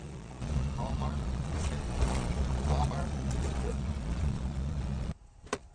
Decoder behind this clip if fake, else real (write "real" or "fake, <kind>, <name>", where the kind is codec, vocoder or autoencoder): fake, vocoder, Vocos